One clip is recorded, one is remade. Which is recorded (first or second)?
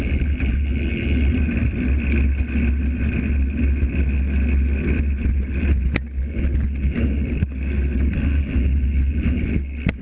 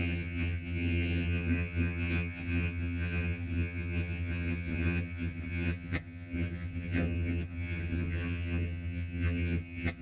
first